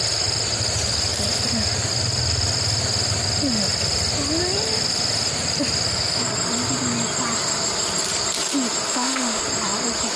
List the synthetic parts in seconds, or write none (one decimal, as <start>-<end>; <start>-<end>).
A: 8.9-9.4